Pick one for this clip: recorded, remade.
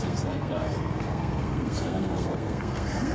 remade